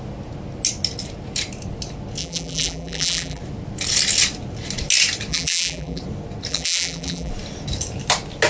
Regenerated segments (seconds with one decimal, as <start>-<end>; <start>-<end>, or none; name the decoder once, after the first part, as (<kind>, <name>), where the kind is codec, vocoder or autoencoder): 2.2-3.4 (vocoder, BigVGAN v2); 5.3-6.0; 6.5-7.3